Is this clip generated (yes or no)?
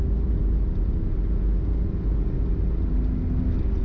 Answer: no